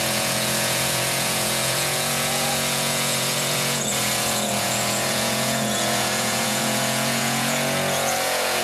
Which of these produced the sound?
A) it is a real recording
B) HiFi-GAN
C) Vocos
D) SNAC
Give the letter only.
C